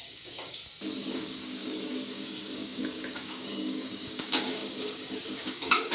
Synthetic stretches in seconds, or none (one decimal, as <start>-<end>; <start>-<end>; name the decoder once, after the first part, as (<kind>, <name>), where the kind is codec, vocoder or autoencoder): 0.0-0.6 (codec, DAC); 1.1-5.9